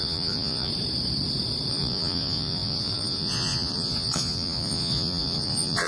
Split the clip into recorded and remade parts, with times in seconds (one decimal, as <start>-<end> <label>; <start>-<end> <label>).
0.0-0.7 remade; 0.7-1.7 recorded; 1.7-5.9 remade